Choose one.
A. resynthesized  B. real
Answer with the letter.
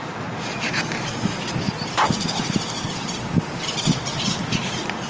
A